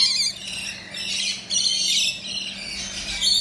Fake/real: real